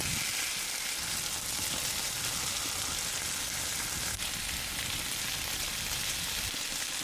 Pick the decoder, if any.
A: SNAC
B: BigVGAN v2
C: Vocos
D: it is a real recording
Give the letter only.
D